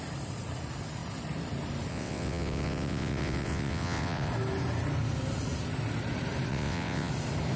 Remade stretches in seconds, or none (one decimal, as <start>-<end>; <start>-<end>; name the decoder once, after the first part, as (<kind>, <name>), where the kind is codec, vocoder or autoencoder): 1.9-4.3 (vocoder, WaveNeXt); 6.5-7.1